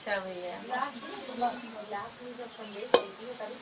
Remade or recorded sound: recorded